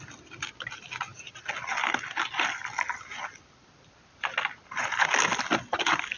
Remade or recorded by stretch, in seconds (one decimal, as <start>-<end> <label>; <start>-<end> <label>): 0.0-6.2 recorded